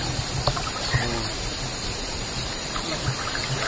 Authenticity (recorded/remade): recorded